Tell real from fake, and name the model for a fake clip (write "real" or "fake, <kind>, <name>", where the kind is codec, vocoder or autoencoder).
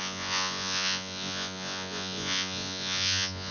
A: fake, vocoder, Vocos